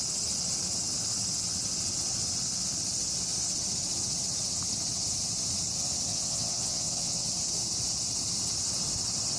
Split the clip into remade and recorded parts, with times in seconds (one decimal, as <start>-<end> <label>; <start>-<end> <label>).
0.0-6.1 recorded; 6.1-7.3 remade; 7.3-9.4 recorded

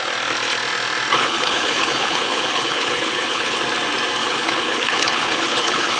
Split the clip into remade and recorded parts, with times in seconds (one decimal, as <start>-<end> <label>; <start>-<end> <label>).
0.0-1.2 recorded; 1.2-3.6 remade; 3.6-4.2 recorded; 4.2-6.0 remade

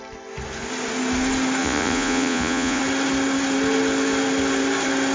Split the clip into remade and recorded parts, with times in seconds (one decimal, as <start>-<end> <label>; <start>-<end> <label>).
0.0-1.6 recorded; 1.6-2.8 remade; 2.8-5.1 recorded